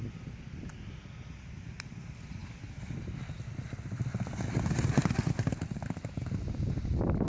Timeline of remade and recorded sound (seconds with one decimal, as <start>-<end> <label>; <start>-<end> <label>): 0.0-7.3 recorded